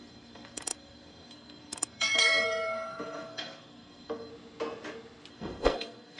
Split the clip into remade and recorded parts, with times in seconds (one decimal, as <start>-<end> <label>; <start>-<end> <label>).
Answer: 0.0-4.3 remade; 4.3-5.3 recorded; 5.3-6.2 remade